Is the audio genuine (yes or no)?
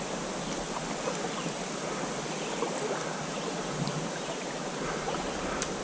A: yes